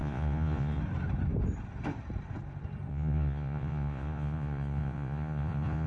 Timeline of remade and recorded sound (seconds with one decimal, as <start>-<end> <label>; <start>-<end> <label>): 0.0-0.8 remade; 0.8-2.9 recorded; 2.9-5.9 remade